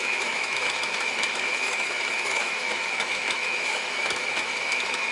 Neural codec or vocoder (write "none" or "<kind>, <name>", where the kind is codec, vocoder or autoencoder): autoencoder, DAC-VAE